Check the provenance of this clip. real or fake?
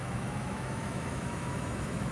fake